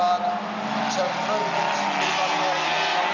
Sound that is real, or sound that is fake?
real